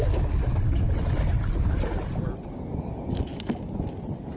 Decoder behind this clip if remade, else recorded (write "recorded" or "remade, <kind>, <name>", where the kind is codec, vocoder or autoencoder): recorded